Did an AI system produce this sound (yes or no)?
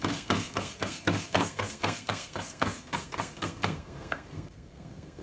yes